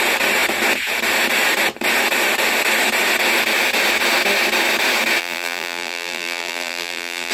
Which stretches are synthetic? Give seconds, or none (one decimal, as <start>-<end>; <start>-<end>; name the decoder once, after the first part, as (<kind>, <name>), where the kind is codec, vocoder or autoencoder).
5.2-7.3 (vocoder, BigVGAN v2)